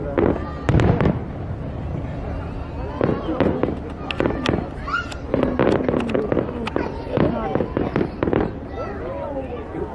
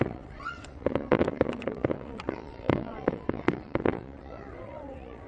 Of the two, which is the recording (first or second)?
first